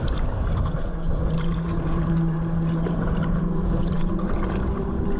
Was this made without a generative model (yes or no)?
no